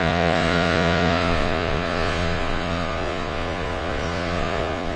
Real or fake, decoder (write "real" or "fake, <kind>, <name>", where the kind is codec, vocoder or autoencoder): fake, vocoder, Vocos